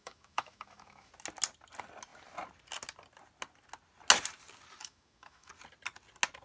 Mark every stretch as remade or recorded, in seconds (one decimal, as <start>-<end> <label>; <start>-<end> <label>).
0.0-1.1 remade; 1.1-4.8 recorded; 4.8-5.5 remade; 5.5-6.4 recorded